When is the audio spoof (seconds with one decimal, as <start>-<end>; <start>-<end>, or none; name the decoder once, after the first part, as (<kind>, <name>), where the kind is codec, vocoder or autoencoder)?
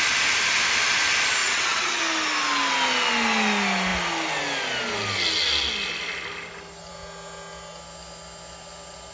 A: 1.4-2.0 (vocoder, WaveNeXt)